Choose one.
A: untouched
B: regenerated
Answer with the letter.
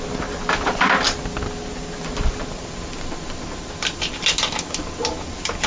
A